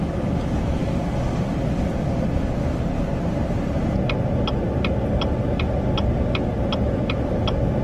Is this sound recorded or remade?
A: recorded